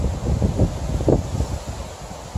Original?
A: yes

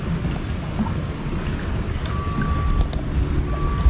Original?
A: yes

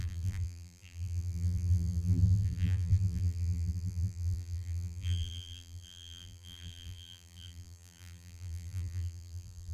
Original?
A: no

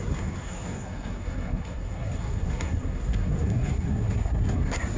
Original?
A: no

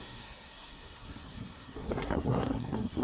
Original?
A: no